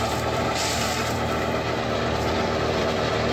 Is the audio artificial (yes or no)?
yes